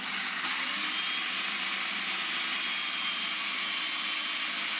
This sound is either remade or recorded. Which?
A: recorded